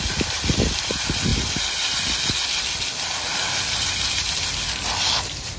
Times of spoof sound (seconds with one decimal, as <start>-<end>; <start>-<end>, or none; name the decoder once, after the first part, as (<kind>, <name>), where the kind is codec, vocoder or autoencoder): none